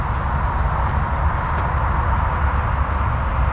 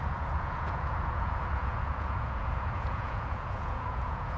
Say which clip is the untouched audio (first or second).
first